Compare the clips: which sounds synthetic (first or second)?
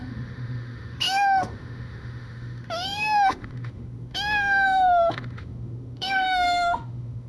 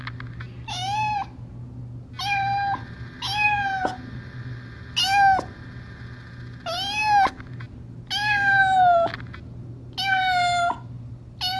first